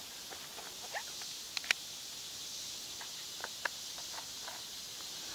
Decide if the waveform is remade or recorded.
recorded